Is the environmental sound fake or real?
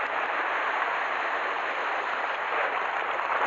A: real